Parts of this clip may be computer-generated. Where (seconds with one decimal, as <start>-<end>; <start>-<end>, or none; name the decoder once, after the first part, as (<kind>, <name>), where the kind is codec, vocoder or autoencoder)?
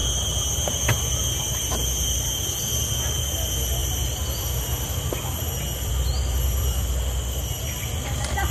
3.8-5.9 (vocoder, BigVGAN v2)